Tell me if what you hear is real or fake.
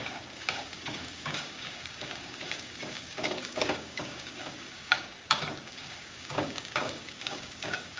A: fake